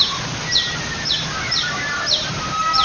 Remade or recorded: recorded